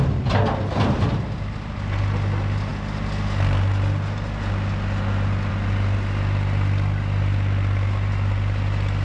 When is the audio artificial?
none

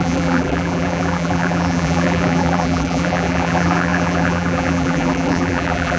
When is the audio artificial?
0.0-6.0 (vocoder, BigVGAN v2)

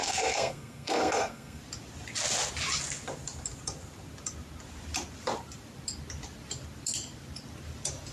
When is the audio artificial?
0.0-1.6 (codec, SNAC)

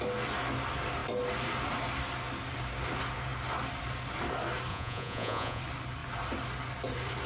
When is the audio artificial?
4.7-5.6 (vocoder, Vocos)

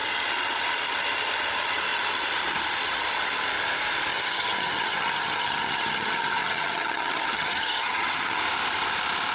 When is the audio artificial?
4.1-8.4 (vocoder, HiFi-GAN)

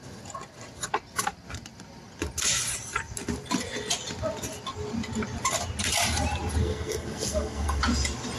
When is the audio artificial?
6.6-7.8 (codec, SNAC)